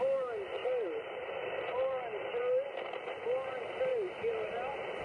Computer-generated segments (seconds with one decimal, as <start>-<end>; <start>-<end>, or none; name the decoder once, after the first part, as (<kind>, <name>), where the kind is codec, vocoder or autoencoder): 0.6-1.2 (vocoder, BigVGAN v2); 2.3-2.9; 3.9-4.5